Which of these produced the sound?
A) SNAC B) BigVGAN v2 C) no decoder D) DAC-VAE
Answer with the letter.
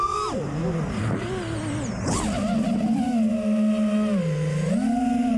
C